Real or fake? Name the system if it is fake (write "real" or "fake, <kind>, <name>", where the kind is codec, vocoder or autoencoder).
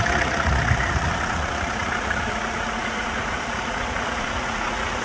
fake, vocoder, Vocos